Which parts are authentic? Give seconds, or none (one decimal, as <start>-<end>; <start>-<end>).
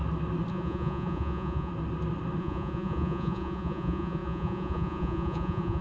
0.0-0.5; 1.7-2.4